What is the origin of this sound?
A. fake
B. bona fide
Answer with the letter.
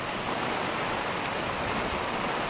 B